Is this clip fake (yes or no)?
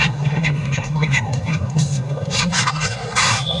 yes